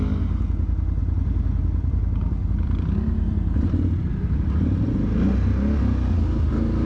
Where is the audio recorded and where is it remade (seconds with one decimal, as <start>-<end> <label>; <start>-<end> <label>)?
0.0-1.0 recorded; 1.0-4.9 remade; 4.9-6.9 recorded